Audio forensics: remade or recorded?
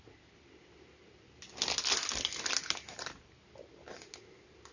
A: recorded